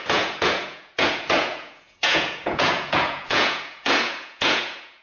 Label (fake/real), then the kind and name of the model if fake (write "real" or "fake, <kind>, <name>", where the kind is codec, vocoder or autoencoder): fake, vocoder, Vocos